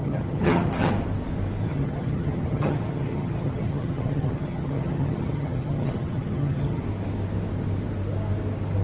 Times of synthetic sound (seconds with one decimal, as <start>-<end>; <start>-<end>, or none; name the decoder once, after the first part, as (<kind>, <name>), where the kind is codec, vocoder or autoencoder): 0.0-0.9 (vocoder, HiFi-GAN); 1.6-6.8